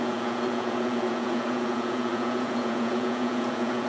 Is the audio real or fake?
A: fake